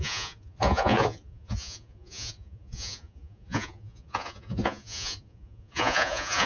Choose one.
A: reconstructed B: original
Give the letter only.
A